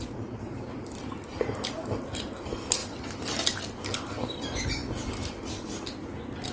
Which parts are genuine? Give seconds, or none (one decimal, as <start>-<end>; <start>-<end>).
0.0-6.5